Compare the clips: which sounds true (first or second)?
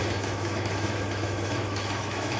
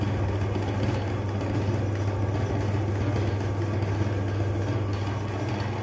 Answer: second